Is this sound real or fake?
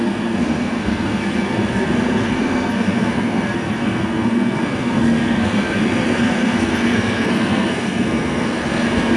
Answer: fake